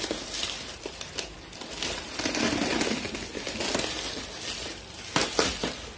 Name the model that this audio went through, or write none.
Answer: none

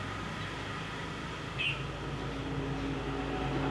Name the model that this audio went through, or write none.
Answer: none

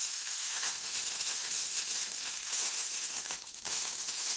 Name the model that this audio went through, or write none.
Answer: autoencoder, DAC-VAE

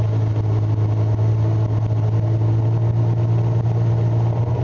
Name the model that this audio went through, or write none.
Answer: none